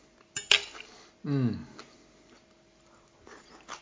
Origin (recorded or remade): recorded